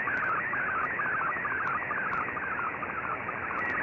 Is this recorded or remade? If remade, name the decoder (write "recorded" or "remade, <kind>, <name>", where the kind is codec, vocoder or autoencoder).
recorded